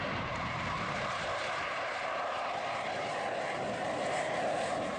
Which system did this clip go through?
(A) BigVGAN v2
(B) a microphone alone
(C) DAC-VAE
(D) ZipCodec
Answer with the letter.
A